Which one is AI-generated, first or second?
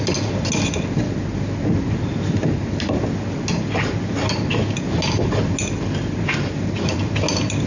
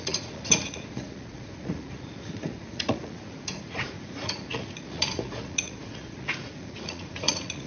second